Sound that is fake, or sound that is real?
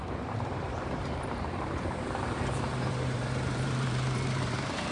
fake